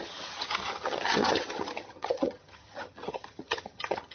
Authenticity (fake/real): fake